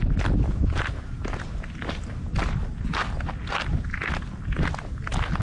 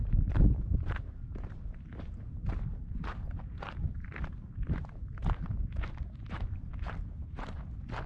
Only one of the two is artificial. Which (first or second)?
second